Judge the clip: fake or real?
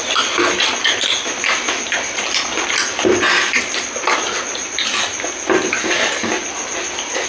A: real